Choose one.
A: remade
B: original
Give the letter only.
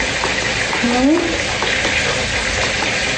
B